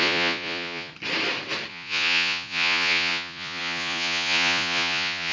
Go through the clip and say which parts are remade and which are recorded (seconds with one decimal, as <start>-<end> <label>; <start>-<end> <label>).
0.0-0.9 remade; 0.9-1.7 recorded; 1.7-5.3 remade